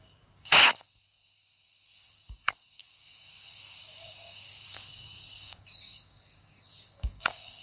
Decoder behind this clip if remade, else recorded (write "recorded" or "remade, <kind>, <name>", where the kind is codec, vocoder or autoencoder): remade, codec, DAC